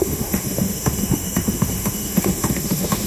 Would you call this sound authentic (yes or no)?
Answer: no